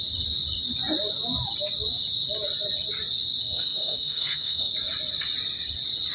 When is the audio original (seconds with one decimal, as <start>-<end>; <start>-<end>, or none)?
0.0-3.4; 4.7-6.1